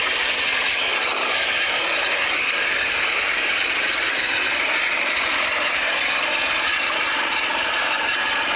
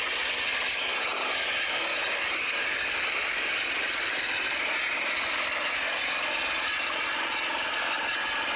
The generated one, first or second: first